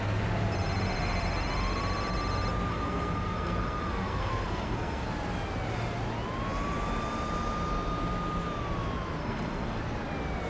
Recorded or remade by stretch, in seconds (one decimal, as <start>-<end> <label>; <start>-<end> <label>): 0.0-2.7 recorded; 2.7-5.1 remade; 5.1-9.2 recorded; 9.2-9.8 remade; 9.8-10.5 recorded